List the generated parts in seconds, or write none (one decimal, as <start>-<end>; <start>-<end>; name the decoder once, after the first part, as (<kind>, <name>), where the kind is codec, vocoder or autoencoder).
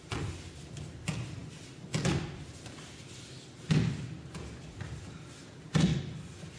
none